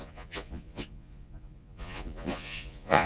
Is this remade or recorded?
remade